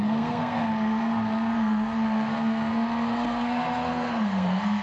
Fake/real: fake